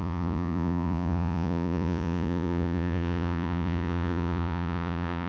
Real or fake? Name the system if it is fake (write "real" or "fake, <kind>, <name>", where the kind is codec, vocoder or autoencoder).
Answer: fake, vocoder, Vocos